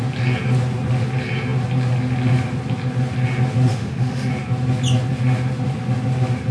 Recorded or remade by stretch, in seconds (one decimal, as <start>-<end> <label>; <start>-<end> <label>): 0.0-3.7 recorded; 3.7-4.3 remade; 4.3-6.5 recorded